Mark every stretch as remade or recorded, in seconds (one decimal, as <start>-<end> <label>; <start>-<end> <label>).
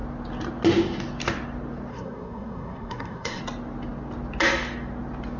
0.0-1.9 recorded; 1.9-3.4 remade; 3.4-5.4 recorded